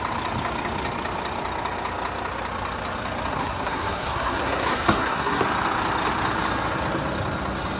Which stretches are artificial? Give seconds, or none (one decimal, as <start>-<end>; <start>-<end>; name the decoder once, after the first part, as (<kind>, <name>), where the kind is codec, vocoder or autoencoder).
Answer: 3.3-5.4 (codec, SNAC)